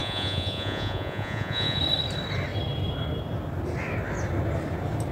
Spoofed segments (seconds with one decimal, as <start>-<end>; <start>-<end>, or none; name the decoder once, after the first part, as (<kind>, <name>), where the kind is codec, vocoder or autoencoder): 0.0-1.8 (vocoder, Vocos)